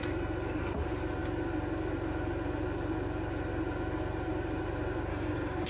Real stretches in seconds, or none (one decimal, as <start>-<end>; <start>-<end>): 0.0-5.1